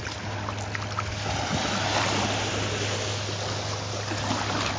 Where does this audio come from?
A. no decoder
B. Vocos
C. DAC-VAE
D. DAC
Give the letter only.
A